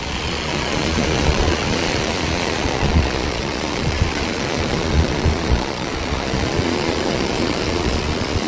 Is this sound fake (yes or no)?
yes